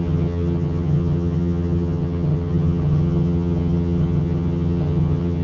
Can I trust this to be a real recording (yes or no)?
no